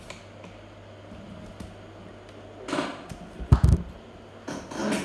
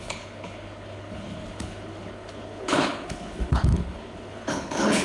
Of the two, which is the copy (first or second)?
second